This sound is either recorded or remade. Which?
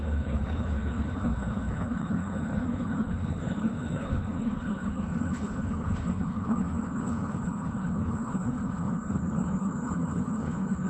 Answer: remade